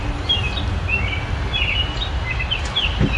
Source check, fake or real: real